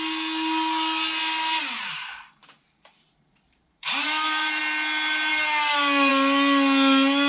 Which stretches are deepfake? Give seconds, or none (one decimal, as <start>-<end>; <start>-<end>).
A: 2.4-4.6

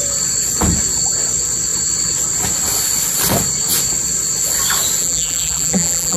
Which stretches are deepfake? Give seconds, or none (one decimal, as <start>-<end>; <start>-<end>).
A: 5.0-6.2

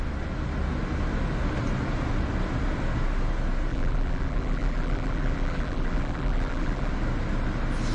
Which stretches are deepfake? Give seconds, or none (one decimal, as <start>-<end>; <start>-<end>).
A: 3.7-6.9

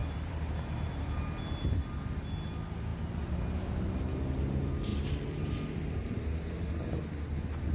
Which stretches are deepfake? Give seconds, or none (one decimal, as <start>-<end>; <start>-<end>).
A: 4.9-6.2

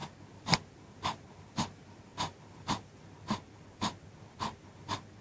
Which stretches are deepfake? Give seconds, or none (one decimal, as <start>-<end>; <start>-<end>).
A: 2.1-4.8

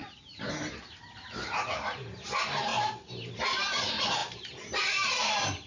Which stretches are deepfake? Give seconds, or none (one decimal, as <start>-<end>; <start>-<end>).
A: 0.0-5.7

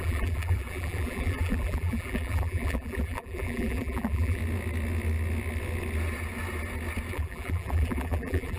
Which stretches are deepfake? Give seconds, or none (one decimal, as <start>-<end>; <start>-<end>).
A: 0.0-4.4; 7.1-8.6